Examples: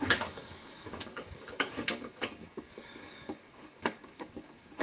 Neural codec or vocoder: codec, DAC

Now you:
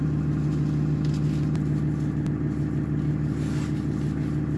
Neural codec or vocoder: none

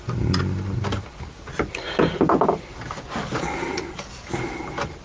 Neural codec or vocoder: none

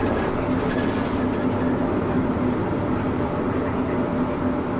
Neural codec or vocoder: none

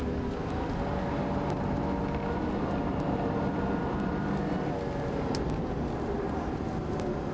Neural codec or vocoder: none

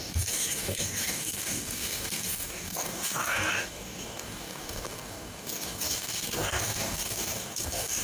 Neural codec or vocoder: codec, DAC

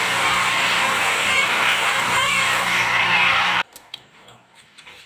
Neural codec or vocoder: codec, DAC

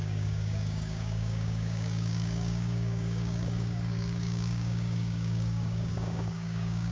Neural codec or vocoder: codec, DAC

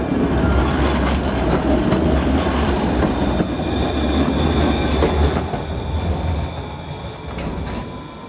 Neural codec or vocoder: none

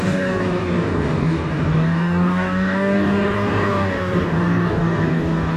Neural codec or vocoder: codec, DAC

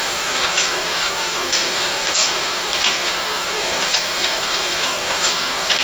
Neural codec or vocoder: codec, DAC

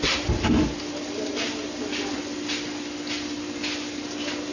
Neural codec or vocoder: none